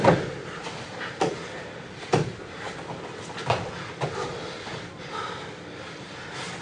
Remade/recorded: recorded